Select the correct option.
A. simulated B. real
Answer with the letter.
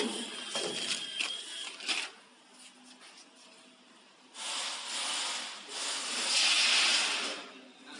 B